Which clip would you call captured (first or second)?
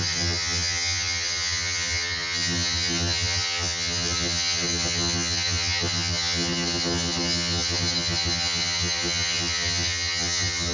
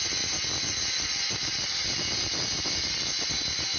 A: second